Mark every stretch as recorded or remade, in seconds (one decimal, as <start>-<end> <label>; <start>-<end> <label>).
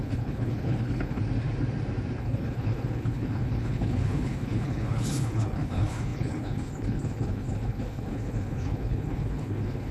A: 0.0-1.2 remade; 1.2-2.2 recorded; 2.2-9.9 remade